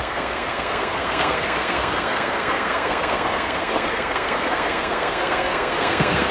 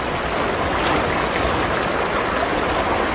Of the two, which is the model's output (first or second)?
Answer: first